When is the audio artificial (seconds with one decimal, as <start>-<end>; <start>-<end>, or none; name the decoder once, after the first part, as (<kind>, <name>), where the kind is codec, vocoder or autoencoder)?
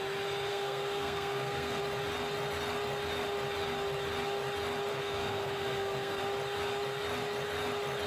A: 0.5-1.8 (codec, SNAC); 4.9-6.2